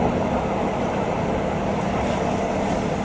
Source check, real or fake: real